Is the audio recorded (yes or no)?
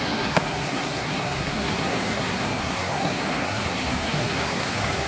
no